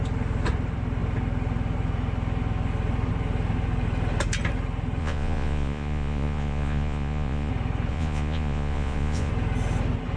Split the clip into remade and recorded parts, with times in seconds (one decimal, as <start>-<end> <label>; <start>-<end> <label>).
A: 0.0-5.0 recorded; 5.0-7.5 remade; 7.5-7.9 recorded; 7.9-9.3 remade; 9.3-10.2 recorded